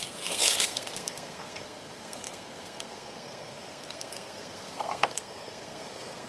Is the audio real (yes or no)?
no